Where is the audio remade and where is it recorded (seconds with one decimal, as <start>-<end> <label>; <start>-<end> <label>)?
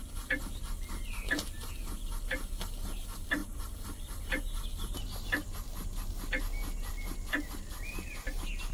0.0-8.7 recorded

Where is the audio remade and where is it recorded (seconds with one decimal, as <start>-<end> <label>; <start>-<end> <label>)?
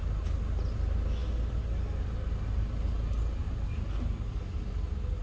0.0-5.2 recorded